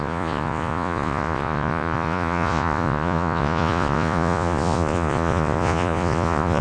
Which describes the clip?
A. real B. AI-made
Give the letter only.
B